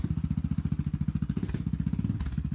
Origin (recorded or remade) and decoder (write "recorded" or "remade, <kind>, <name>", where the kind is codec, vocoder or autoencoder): recorded